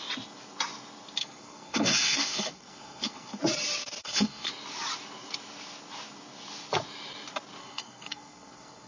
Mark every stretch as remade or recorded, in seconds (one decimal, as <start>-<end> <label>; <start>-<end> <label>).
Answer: 0.0-1.2 recorded; 1.2-3.4 remade; 3.4-4.0 recorded; 4.0-4.5 remade; 4.5-7.6 recorded; 7.6-8.9 remade